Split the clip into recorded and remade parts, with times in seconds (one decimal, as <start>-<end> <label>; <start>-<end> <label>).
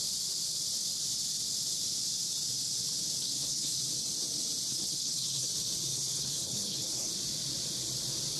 0.0-3.2 recorded; 3.2-3.8 remade; 3.8-4.7 recorded; 4.7-5.5 remade; 5.5-5.9 recorded; 5.9-7.1 remade; 7.1-8.4 recorded